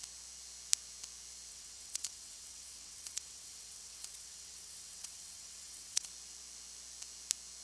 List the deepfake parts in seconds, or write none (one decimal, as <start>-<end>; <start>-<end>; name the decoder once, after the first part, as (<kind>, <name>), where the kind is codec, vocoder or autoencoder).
1.5-6.1 (vocoder, WaveNeXt)